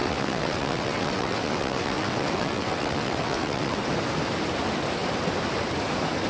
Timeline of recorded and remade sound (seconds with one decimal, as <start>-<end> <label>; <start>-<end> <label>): 0.0-3.8 remade; 3.8-6.3 recorded